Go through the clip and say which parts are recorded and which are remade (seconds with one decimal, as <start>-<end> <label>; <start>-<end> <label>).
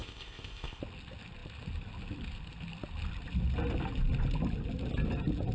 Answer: 0.0-0.8 remade; 0.8-5.5 recorded